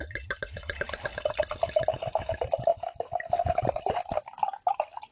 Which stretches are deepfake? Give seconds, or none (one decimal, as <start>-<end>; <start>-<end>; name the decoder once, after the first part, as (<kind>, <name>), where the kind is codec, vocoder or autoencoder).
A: none